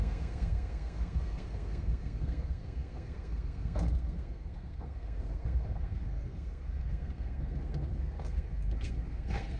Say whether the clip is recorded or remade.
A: remade